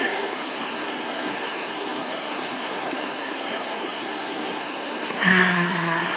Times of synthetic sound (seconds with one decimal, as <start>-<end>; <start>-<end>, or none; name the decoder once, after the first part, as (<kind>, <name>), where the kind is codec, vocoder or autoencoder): 0.0-6.2 (codec, SNAC)

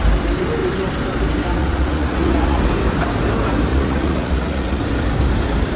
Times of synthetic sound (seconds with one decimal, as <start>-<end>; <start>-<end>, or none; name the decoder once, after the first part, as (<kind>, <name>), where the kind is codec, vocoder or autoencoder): 1.6-2.6 (vocoder, Vocos); 3.7-4.8

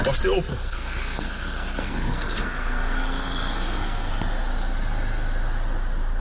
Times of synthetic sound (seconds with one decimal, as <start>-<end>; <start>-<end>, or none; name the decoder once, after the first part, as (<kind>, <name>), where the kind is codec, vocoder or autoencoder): 0.5-4.1 (codec, SNAC)

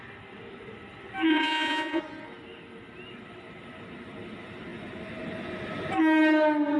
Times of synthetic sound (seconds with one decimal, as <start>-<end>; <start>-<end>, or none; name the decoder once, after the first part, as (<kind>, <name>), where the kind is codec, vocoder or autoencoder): 1.3-2.0 (vocoder, Vocos)

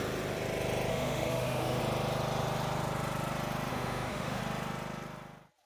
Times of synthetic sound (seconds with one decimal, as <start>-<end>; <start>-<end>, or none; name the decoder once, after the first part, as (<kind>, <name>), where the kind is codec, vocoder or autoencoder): 0.9-1.8 (autoencoder, DAC-VAE); 3.7-4.4

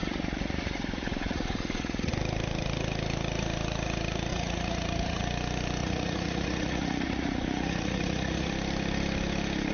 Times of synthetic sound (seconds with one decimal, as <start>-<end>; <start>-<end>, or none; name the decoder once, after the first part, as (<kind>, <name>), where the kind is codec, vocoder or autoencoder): 0.0-2.1 (vocoder, Vocos); 4.3-5.2; 5.8-8.5

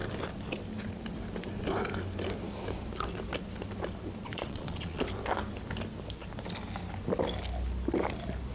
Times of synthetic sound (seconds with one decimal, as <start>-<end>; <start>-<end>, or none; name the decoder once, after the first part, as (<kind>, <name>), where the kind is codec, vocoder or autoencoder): 4.3-5.0 (vocoder, Vocos)

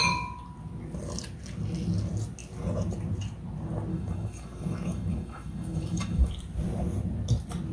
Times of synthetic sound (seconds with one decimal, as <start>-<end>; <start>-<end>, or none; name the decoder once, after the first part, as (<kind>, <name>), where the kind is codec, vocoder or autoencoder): 3.9-6.3 (autoencoder, DAC-VAE)